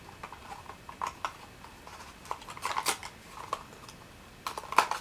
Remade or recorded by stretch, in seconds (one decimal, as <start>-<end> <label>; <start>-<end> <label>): 0.0-5.0 recorded